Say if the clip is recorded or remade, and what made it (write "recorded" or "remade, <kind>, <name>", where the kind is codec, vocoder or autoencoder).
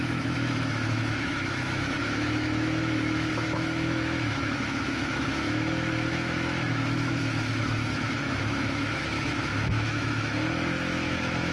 remade, autoencoder, DAC-VAE